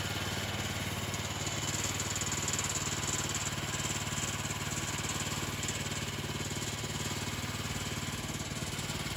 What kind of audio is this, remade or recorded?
recorded